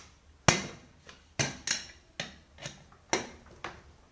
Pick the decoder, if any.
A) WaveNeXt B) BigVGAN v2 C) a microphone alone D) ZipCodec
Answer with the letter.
C